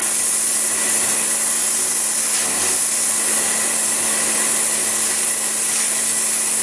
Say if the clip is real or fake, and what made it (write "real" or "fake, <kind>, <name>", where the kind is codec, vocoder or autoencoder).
real